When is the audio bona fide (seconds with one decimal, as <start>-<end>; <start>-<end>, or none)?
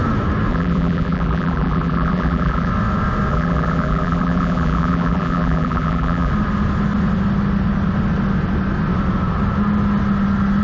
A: 0.0-0.5; 2.7-3.3; 6.3-10.6